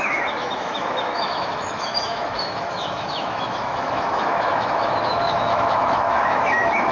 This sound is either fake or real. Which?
fake